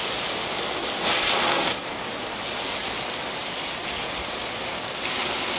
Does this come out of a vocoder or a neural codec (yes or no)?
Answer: no